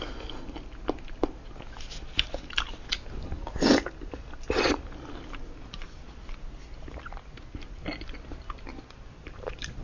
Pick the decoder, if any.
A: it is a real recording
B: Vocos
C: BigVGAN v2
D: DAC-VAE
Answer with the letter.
A